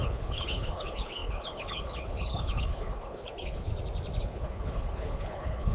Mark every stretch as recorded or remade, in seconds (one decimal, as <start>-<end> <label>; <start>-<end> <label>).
0.0-3.7 remade; 3.7-4.2 recorded; 4.2-5.7 remade